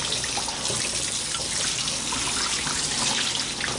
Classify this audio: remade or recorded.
recorded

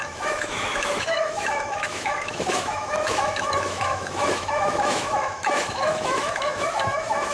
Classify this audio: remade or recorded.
remade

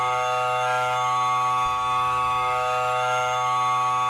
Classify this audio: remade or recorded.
remade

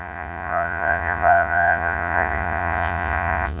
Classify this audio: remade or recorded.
remade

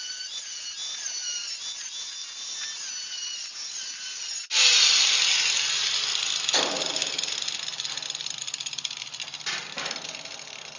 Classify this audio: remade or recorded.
recorded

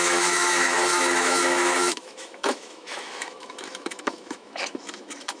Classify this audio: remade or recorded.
remade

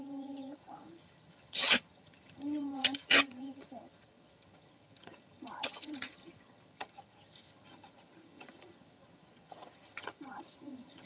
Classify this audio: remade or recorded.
remade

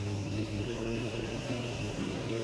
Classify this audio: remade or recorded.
remade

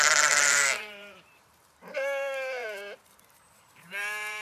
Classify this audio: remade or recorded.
remade